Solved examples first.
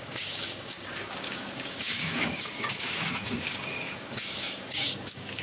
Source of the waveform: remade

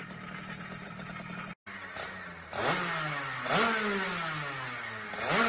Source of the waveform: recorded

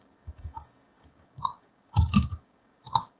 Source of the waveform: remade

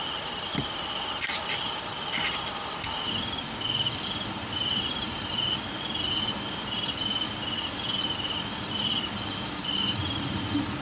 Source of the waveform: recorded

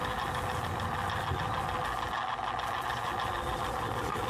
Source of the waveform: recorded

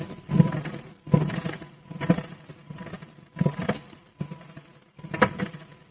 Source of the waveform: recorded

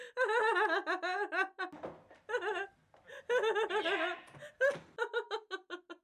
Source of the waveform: recorded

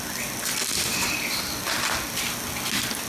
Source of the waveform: recorded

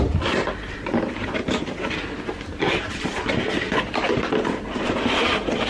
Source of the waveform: recorded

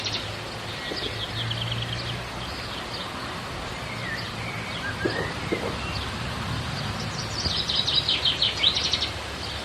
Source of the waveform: recorded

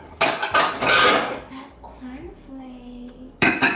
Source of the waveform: remade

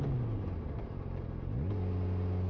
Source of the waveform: recorded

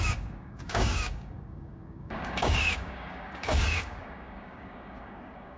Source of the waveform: remade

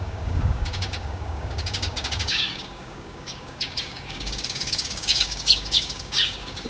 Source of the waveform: remade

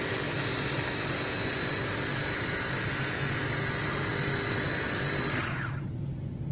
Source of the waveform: recorded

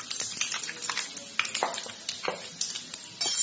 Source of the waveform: recorded